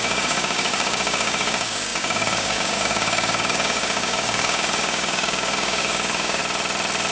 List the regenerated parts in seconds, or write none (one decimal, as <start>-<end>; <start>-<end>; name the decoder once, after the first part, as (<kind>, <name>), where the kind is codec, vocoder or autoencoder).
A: 0.0-6.4 (codec, DAC)